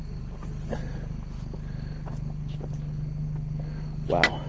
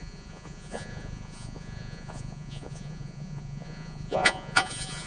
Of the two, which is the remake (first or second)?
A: second